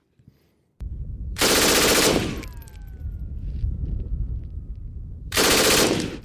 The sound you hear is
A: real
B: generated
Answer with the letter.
B